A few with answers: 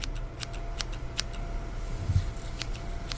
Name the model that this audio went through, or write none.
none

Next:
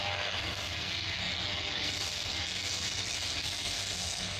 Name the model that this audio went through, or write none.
codec, SNAC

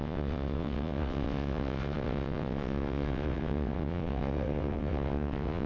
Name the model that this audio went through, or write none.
vocoder, WaveNeXt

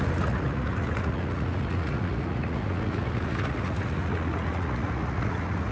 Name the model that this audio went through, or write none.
vocoder, Vocos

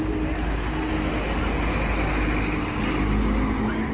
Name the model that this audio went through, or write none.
none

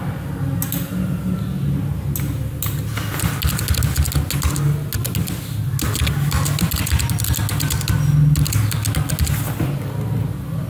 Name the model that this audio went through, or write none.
none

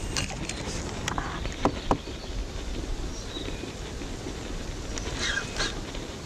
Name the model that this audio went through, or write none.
none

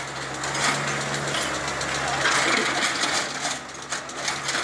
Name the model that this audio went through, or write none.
none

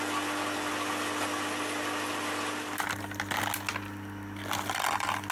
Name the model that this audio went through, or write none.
none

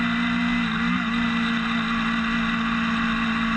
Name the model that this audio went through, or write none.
none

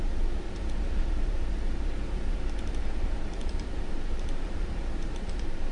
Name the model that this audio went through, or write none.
vocoder, BigVGAN v2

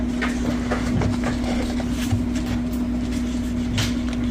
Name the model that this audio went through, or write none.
none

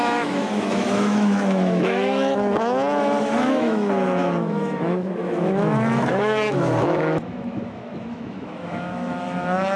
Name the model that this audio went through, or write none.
autoencoder, DAC-VAE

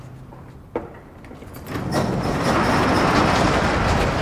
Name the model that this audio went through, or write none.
none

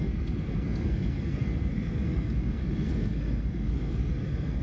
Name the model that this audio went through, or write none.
codec, SNAC